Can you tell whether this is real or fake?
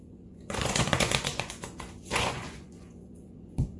fake